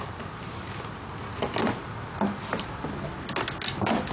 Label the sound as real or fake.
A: real